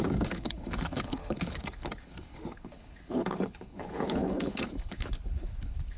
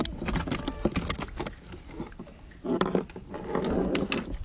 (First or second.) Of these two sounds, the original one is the second